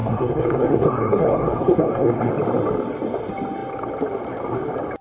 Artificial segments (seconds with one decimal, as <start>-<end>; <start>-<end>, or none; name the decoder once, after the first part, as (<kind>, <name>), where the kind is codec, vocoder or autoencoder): 0.0-2.3 (codec, SNAC)